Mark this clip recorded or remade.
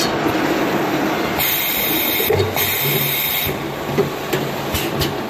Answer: recorded